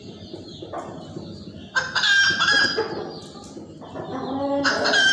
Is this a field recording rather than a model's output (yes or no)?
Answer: yes